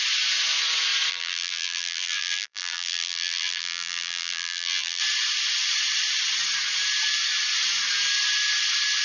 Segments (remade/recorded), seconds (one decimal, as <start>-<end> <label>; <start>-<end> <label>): 0.0-1.1 recorded; 1.1-5.0 remade; 5.0-9.0 recorded